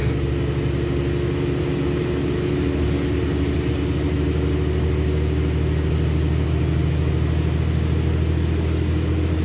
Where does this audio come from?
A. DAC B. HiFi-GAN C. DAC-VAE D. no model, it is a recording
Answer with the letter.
D